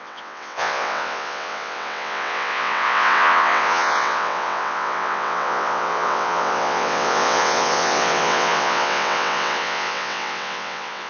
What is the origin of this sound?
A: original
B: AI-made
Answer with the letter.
B